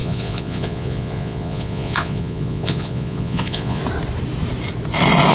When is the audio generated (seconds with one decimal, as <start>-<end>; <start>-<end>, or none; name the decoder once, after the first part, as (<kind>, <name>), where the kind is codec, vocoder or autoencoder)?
0.0-3.8 (vocoder, Vocos)